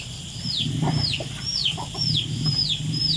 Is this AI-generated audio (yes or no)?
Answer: no